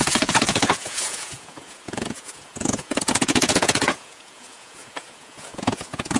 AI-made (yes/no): yes